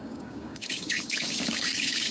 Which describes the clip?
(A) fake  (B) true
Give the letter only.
A